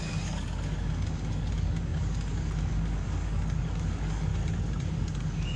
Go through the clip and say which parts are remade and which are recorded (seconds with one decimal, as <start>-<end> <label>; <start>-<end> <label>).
0.0-4.3 remade; 4.3-4.9 recorded; 4.9-5.6 remade